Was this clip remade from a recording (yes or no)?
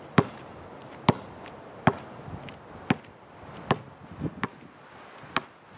no